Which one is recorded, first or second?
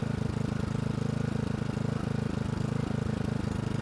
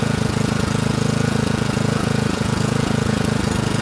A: first